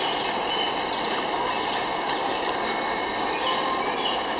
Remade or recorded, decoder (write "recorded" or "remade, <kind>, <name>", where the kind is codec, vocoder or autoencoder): recorded